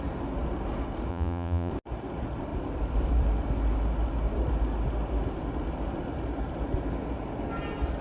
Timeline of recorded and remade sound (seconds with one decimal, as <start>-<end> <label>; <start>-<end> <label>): 0.0-1.1 recorded; 1.1-1.7 remade; 1.7-8.0 recorded